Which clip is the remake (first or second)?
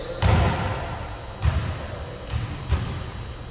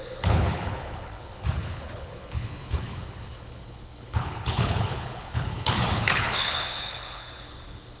second